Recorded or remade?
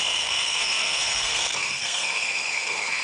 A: remade